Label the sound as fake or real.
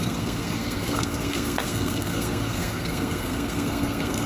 fake